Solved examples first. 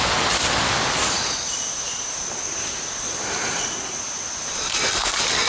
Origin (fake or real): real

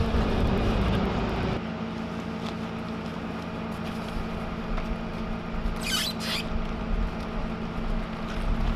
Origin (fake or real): real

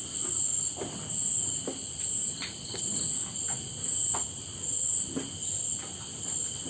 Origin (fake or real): real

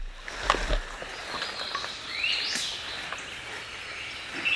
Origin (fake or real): real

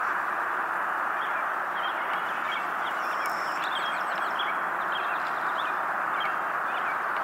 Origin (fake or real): real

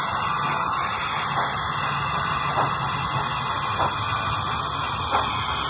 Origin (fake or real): real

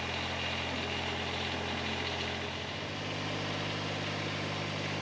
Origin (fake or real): real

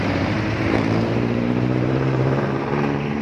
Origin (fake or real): fake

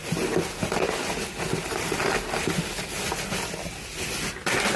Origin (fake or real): real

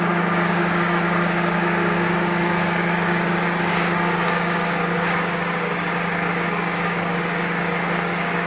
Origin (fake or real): fake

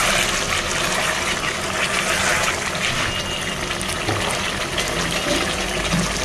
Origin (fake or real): real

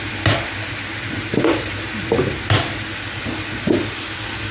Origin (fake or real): real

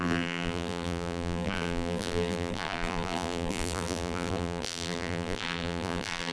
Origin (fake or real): fake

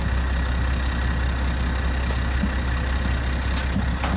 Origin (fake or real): real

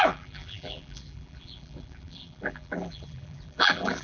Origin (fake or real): fake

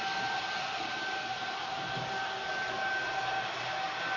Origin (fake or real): real